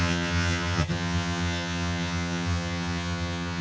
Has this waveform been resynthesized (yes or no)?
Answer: yes